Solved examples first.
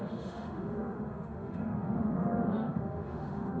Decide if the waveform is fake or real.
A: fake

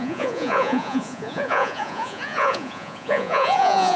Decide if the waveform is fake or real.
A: fake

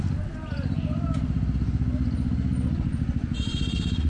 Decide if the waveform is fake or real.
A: real